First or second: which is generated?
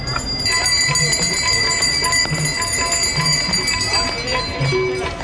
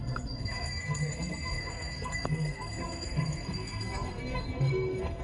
second